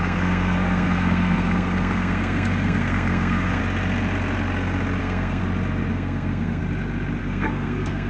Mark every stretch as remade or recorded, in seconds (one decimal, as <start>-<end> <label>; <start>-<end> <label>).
0.0-3.6 remade; 3.6-5.0 recorded; 5.0-5.4 remade; 5.4-5.9 recorded; 5.9-6.6 remade; 6.6-7.2 recorded; 7.2-8.1 remade